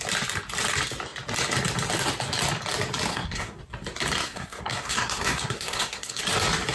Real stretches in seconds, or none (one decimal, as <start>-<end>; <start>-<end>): 0.0-3.1; 3.6-4.2; 6.2-6.7